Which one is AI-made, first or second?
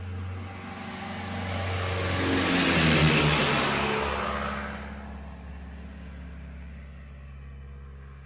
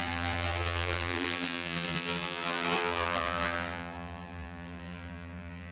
second